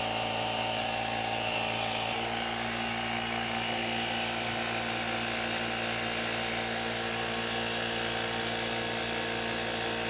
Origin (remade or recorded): recorded